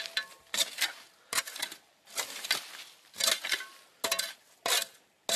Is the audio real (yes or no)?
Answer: yes